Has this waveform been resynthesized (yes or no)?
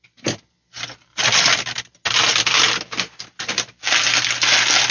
no